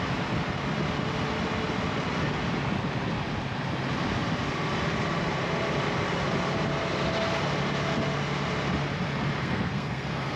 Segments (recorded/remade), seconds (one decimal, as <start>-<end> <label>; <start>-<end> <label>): 0.0-9.4 recorded; 9.4-10.4 remade